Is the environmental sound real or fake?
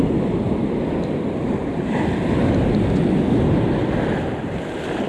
real